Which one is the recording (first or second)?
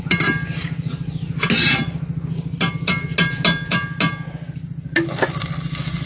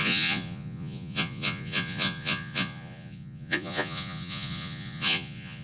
first